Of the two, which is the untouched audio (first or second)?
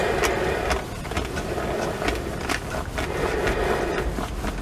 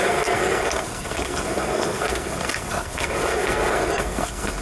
first